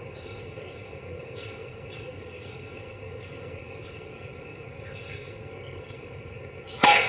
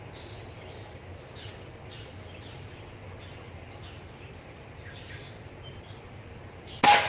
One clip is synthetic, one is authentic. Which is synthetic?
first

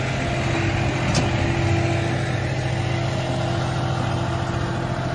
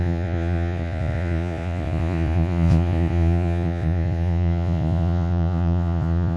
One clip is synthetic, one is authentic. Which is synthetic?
second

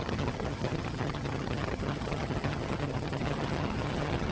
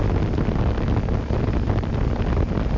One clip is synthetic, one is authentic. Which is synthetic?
first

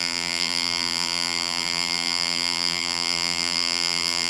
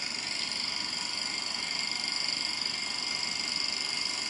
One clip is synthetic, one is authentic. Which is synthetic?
first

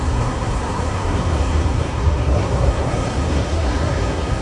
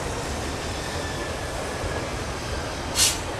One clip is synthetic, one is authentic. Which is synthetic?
first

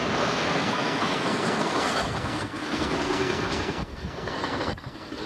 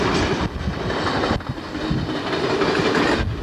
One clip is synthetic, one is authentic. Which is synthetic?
first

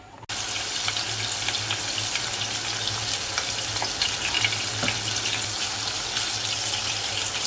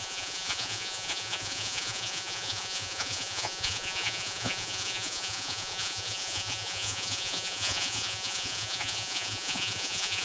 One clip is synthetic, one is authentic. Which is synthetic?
second